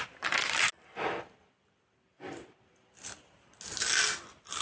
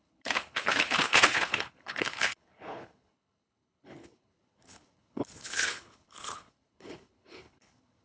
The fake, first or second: second